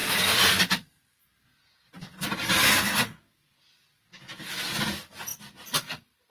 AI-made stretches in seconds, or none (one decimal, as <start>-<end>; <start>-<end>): none